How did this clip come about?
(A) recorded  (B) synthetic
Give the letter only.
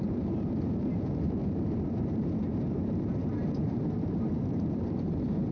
B